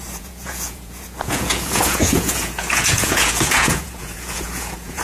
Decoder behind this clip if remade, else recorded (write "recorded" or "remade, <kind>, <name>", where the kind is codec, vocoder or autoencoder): remade, vocoder, Vocos